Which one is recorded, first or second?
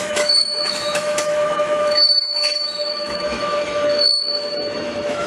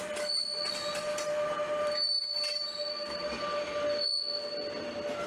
second